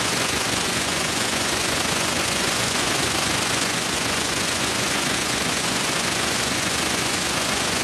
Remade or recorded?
remade